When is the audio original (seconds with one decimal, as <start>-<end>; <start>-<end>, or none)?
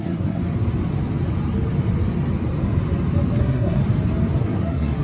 0.4-3.4; 3.8-4.4